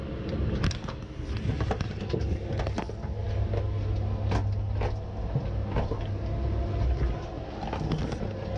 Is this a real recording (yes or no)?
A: yes